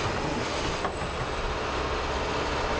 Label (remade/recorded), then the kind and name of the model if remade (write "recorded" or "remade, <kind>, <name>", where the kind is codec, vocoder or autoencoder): recorded